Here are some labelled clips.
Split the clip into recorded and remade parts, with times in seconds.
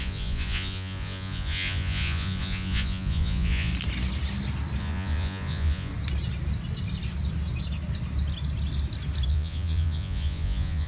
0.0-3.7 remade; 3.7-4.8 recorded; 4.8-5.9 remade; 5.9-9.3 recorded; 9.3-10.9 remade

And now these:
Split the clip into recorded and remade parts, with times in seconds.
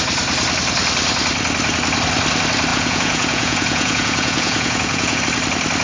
0.0-2.7 recorded; 2.7-5.2 remade; 5.2-5.8 recorded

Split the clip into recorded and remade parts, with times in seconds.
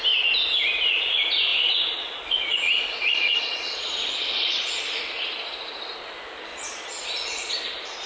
0.0-1.5 recorded; 1.5-4.7 remade; 4.7-6.5 recorded; 6.5-7.5 remade; 7.5-8.1 recorded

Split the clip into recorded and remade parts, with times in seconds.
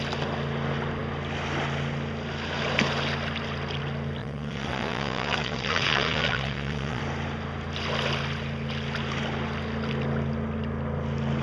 0.0-4.2 recorded; 4.2-7.0 remade; 7.0-11.4 recorded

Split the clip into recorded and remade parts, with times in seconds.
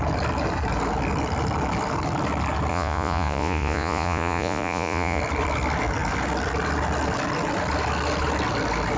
0.0-2.7 recorded; 2.7-5.2 remade; 5.2-9.0 recorded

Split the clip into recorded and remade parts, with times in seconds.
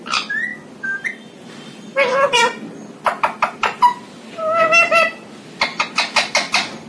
0.0-6.9 recorded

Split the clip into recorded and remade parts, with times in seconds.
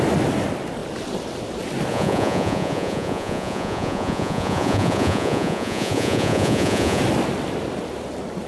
0.0-1.9 recorded; 1.9-7.0 remade; 7.0-8.5 recorded